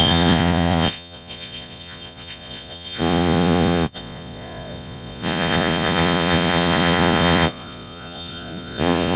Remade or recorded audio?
remade